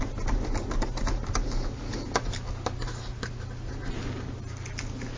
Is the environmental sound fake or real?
real